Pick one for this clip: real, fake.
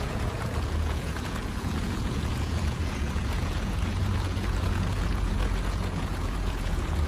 fake